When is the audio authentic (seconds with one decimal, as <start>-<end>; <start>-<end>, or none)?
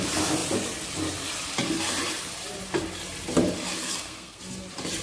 0.0-3.8; 4.4-5.0